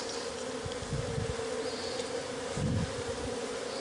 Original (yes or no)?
yes